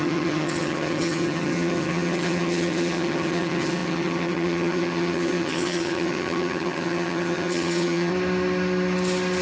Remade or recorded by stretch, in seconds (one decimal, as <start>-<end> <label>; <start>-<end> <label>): 0.0-8.1 remade; 8.1-9.4 recorded